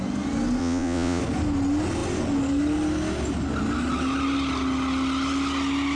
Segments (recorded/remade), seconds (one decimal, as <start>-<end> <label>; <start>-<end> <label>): 0.0-0.6 recorded; 0.6-1.2 remade; 1.2-6.0 recorded